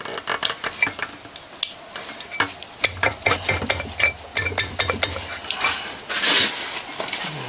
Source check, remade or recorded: recorded